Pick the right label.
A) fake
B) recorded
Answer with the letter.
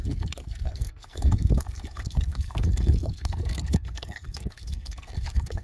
A